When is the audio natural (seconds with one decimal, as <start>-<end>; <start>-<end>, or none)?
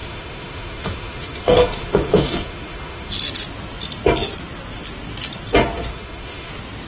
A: 3.1-5.9; 6.5-6.9